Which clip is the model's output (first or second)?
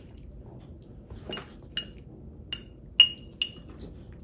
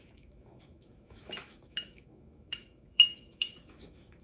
second